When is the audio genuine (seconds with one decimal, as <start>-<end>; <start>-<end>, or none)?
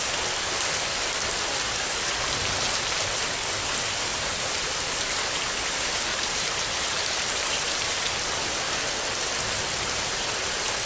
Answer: 0.0-4.1; 5.0-6.1; 8.1-10.9